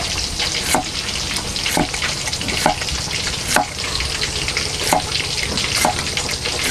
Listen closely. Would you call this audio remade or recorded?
recorded